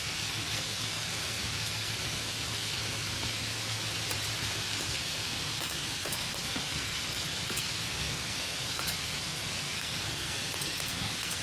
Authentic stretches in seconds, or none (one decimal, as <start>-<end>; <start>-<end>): 3.8-4.4